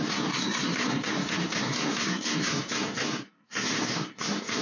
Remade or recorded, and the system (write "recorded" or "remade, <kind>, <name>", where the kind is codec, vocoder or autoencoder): remade, codec, SNAC